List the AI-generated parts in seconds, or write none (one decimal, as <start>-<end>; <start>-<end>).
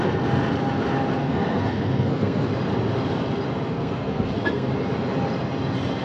1.2-2.5; 3.7-4.7